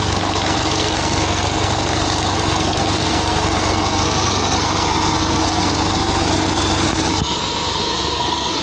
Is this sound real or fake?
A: fake